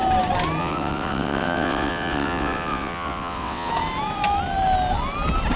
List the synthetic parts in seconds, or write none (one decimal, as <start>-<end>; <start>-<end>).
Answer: 0.6-3.7